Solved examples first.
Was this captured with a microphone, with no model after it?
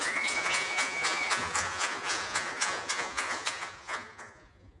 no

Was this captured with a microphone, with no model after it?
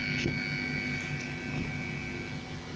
yes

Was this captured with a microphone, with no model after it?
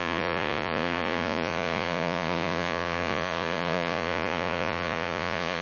no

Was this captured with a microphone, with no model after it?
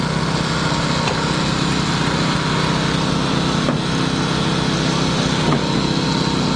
yes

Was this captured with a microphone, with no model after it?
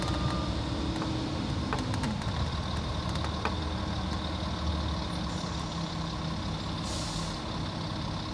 yes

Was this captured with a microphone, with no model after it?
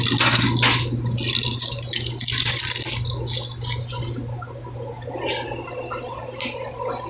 yes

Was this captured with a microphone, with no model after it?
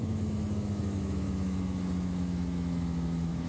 no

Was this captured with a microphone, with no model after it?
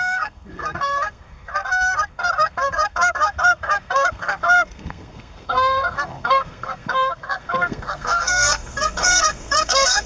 no